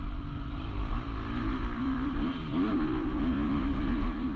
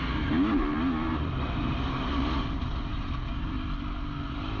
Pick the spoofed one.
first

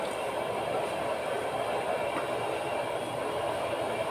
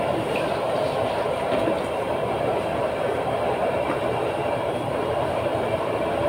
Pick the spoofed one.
second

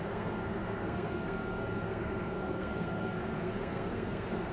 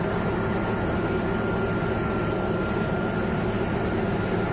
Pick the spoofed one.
first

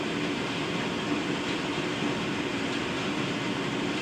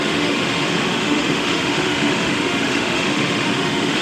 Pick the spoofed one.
second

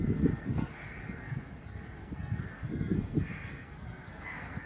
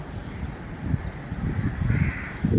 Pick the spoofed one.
first